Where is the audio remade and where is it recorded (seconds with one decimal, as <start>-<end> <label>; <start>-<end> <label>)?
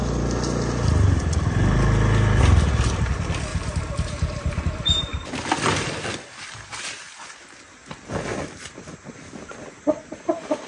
0.0-3.5 recorded; 3.5-4.6 remade; 4.6-10.7 recorded